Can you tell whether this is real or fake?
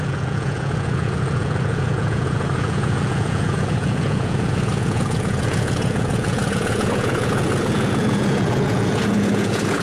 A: fake